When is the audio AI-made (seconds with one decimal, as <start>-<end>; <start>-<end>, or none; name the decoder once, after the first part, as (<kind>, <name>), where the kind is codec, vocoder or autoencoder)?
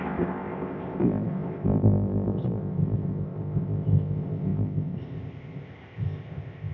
0.0-6.7 (codec, ZipCodec)